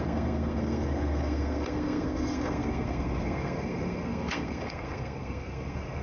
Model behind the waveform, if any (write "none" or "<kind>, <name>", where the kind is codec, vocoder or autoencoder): codec, SNAC